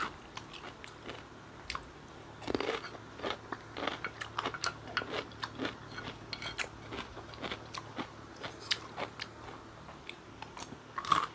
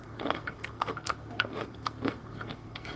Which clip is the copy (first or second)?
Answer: second